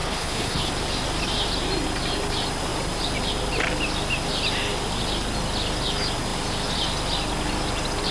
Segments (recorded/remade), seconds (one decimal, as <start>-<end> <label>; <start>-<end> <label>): 0.0-0.7 remade; 0.7-8.1 recorded